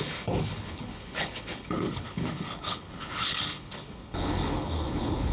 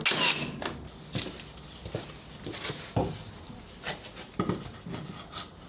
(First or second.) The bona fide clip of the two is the second